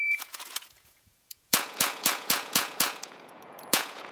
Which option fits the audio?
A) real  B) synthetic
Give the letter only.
B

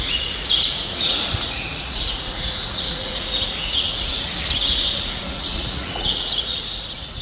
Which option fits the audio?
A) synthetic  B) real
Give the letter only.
A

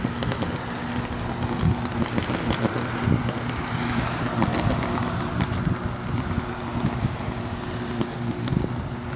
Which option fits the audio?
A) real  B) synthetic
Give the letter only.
A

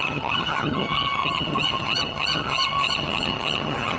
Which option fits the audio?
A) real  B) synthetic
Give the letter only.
B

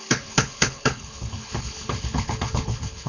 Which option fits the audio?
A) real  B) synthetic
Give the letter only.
B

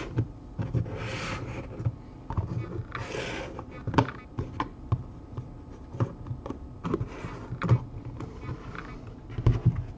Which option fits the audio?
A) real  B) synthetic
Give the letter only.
A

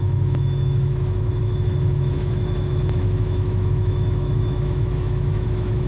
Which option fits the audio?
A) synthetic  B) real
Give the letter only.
A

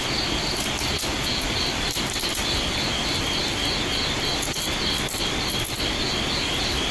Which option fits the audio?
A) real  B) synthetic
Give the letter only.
A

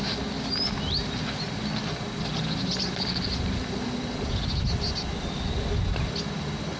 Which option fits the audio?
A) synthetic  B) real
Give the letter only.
B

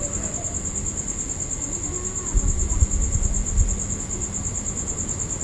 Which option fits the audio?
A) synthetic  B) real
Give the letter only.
B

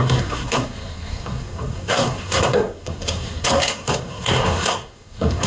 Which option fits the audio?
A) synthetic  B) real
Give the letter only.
A